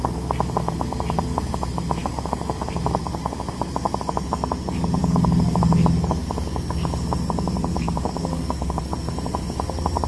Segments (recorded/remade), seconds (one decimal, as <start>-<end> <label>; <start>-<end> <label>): 0.0-5.0 recorded; 5.0-5.6 remade; 5.6-7.7 recorded; 7.7-8.8 remade; 8.8-10.1 recorded

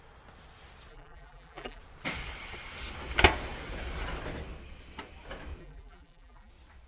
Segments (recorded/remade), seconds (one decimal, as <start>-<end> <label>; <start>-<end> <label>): 0.0-0.9 recorded; 0.9-1.8 remade; 1.8-5.6 recorded; 5.6-6.5 remade; 6.5-6.9 recorded

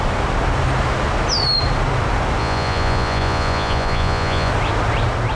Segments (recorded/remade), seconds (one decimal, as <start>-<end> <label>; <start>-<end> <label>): 0.0-2.4 recorded; 2.4-4.5 remade; 4.5-5.4 recorded

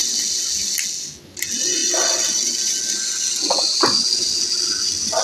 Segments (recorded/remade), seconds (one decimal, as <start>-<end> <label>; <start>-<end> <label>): 0.0-5.2 recorded

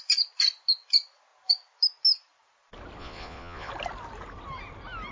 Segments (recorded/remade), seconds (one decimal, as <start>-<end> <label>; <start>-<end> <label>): 0.0-3.0 recorded; 3.0-3.7 remade; 3.7-5.1 recorded

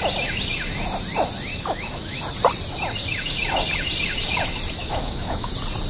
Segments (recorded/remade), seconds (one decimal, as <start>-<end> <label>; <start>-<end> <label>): 0.0-1.5 recorded; 1.5-2.2 remade; 2.2-4.8 recorded; 4.8-5.5 remade; 5.5-5.9 recorded

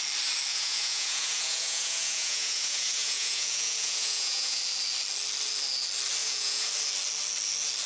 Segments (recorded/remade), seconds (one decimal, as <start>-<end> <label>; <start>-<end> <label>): 0.0-0.5 recorded; 0.5-4.6 remade; 4.6-6.2 recorded; 6.2-6.7 remade; 6.7-7.9 recorded

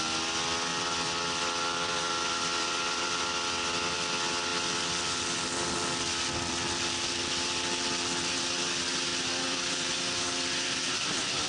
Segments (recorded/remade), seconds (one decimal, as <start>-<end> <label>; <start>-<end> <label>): 0.0-0.7 recorded; 0.7-3.2 remade; 3.2-9.1 recorded; 9.1-11.5 remade